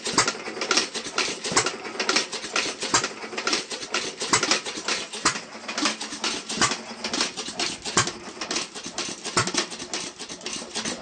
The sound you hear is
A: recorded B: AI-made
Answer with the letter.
A